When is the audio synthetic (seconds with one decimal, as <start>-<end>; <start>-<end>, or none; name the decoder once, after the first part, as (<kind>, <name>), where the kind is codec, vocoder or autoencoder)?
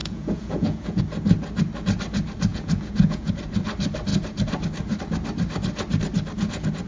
0.0-1.0 (vocoder, Vocos); 2.5-3.3